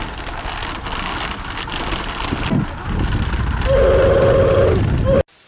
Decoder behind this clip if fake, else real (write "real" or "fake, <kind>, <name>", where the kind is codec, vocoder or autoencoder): real